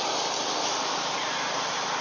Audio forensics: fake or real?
real